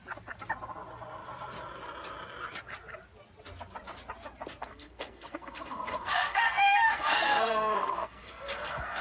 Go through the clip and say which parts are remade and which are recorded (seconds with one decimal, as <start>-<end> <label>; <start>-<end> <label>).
0.0-4.6 recorded; 4.6-9.0 remade